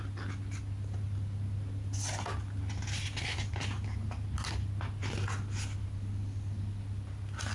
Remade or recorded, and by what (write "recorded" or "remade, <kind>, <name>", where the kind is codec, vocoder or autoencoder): recorded